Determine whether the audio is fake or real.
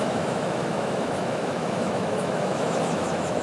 fake